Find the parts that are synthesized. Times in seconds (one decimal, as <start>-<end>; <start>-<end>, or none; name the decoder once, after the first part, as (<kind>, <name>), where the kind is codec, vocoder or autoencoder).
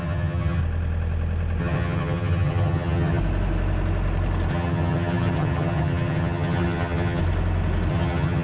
0.0-0.6 (vocoder, HiFi-GAN); 1.6-3.2; 4.5-7.2; 7.9-8.4